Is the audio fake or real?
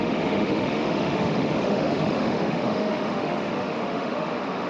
fake